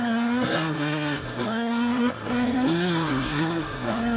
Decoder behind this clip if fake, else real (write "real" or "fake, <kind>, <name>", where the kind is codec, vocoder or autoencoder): fake, codec, SNAC